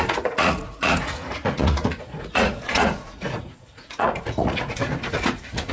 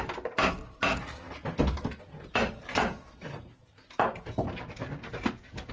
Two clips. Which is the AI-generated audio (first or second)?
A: first